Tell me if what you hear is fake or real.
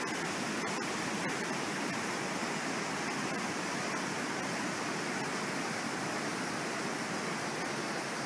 real